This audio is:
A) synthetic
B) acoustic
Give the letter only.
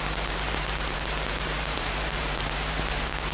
A